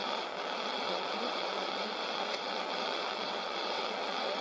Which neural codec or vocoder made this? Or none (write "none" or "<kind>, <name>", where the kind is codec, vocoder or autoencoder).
vocoder, WaveNeXt